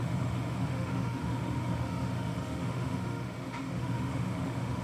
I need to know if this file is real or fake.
fake